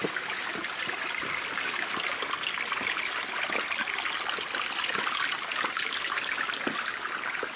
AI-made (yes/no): no